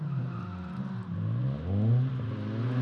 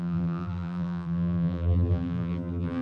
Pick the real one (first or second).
first